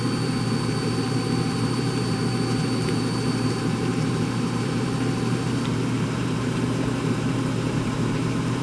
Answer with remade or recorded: remade